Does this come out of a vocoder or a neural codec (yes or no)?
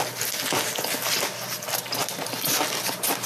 no